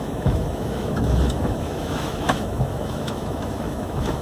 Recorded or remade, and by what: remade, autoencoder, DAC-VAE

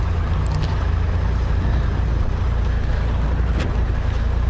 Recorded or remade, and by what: recorded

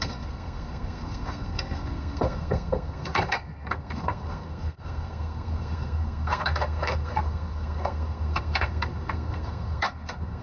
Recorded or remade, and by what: remade, codec, SNAC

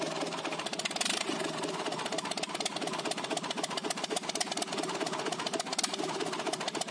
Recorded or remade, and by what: recorded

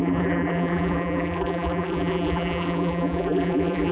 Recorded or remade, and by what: remade, vocoder, BigVGAN v2